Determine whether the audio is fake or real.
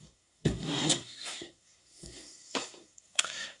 fake